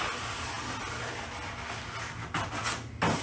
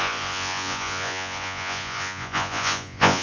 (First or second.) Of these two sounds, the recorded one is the first